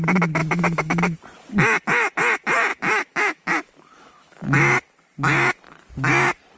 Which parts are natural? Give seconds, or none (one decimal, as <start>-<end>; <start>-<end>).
0.0-0.4; 1.2-2.7; 4.4-6.6